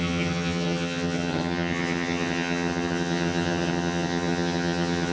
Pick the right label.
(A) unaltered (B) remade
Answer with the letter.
B